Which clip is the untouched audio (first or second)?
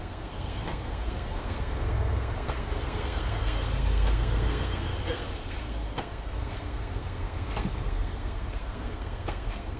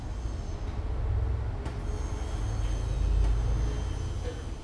second